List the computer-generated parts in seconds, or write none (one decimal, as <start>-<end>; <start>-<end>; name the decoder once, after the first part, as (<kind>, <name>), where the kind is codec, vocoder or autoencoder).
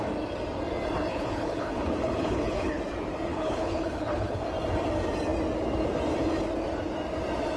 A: 1.1-2.8 (codec, HILCodec); 3.3-4.4